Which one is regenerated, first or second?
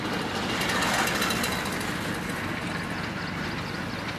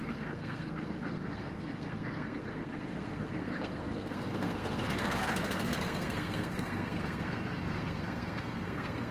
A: second